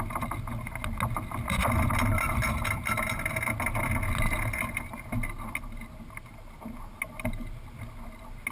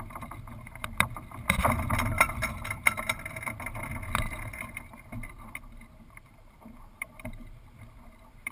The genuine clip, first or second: first